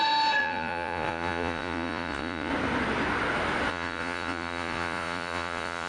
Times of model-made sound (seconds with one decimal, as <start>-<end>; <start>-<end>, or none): 0.4-2.5; 3.7-5.9